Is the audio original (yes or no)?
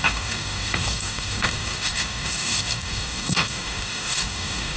no